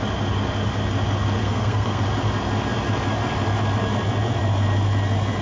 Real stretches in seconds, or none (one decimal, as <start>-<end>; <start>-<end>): 0.0-1.4; 2.0-5.4